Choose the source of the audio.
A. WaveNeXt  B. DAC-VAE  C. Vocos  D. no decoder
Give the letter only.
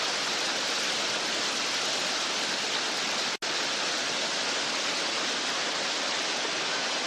D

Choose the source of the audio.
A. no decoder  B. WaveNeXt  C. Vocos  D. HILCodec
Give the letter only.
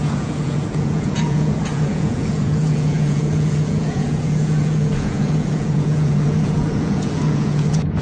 C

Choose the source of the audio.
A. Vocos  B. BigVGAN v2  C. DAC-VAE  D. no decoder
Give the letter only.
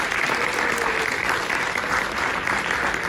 D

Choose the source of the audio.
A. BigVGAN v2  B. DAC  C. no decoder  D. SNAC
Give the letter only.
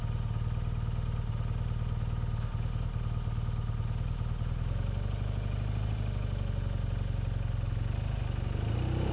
C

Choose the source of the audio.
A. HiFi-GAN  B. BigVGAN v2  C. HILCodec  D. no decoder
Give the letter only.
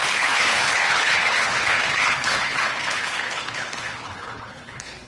C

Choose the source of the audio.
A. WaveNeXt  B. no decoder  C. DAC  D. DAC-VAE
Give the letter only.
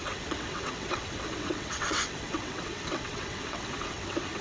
A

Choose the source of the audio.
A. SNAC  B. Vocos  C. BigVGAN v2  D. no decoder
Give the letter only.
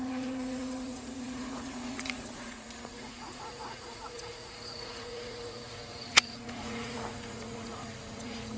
B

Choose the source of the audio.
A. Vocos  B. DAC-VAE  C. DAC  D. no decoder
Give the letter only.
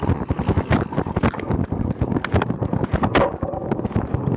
D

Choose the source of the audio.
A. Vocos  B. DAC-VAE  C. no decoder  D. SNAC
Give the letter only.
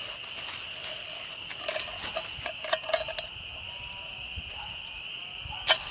C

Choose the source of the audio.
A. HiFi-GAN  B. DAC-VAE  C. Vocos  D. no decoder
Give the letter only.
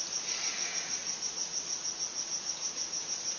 C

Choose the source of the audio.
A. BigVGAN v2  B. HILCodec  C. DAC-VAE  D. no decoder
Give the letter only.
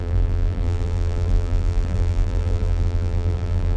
A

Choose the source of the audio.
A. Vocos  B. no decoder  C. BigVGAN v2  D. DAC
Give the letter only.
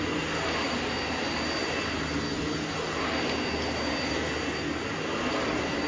B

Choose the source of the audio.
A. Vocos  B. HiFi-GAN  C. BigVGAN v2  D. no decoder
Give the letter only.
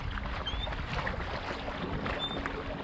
D